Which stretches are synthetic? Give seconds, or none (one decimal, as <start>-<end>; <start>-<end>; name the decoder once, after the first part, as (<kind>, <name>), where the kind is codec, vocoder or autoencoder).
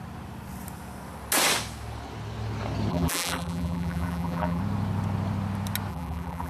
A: 2.9-4.6 (vocoder, BigVGAN v2); 5.9-6.5